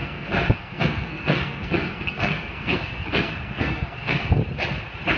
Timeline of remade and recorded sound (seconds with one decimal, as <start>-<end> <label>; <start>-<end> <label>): 0.0-4.4 remade; 4.4-5.2 recorded